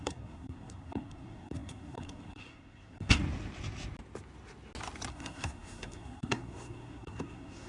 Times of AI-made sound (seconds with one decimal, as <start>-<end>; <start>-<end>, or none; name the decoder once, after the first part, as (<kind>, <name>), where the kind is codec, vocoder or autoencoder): 0.0-3.2 (codec, SNAC); 5.1-7.7